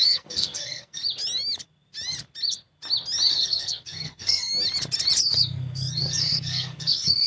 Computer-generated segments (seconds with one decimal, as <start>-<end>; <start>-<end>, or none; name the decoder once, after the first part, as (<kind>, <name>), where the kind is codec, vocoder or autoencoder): 0.0-1.0 (codec, SNAC); 3.3-4.5; 5.2-7.3